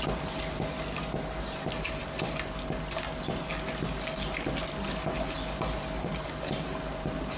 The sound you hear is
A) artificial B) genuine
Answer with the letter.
B